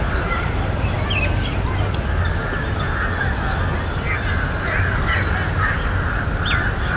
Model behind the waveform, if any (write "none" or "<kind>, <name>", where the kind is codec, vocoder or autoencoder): none